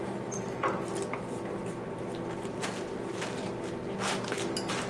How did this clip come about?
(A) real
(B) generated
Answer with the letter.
A